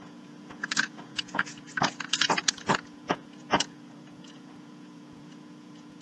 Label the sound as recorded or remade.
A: remade